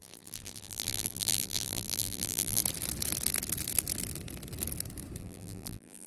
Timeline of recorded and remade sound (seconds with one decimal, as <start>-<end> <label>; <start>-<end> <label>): 0.0-2.6 remade; 2.6-5.2 recorded; 5.2-6.1 remade